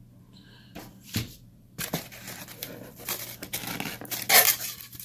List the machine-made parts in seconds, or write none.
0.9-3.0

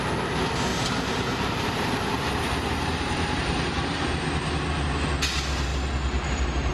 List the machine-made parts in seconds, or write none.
0.7-4.1; 5.7-6.7

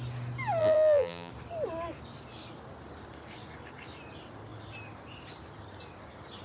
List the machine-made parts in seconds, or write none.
0.6-1.3